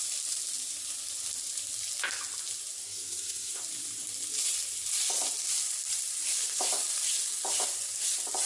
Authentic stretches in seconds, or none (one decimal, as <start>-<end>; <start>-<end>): 0.0-2.8; 3.6-8.5